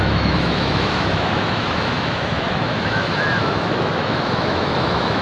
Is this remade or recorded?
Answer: remade